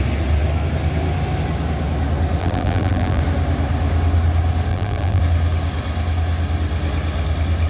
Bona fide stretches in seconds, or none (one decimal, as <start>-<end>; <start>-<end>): 0.0-2.4; 3.2-4.7; 5.2-7.7